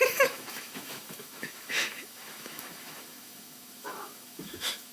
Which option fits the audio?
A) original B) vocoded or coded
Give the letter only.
B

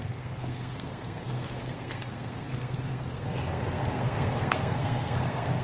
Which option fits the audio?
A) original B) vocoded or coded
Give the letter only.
B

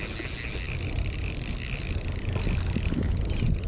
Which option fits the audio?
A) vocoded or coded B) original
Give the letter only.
B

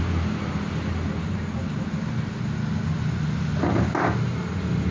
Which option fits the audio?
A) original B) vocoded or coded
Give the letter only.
A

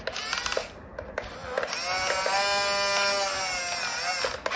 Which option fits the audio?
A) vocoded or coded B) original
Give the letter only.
B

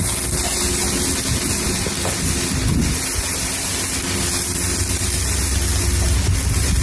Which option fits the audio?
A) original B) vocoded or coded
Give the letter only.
A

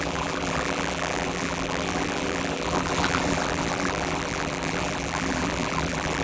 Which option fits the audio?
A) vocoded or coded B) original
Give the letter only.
A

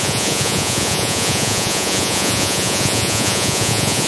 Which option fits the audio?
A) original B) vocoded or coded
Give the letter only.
B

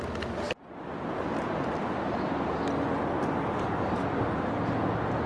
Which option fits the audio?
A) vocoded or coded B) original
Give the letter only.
B